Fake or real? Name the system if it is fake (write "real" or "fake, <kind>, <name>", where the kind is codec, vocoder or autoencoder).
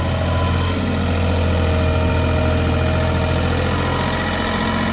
real